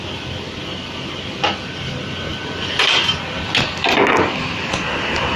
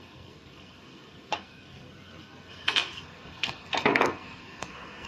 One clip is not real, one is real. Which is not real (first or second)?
second